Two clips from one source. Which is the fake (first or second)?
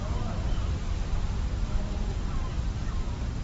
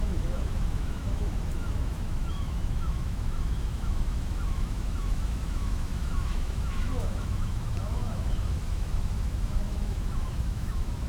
second